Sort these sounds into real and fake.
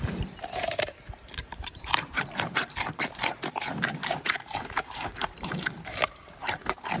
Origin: fake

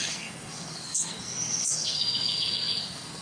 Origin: fake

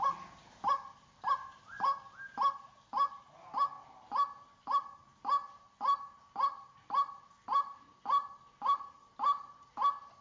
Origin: real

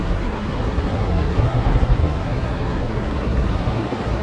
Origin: fake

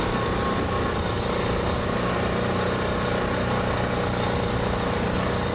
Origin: real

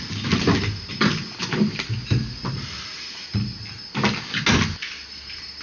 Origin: real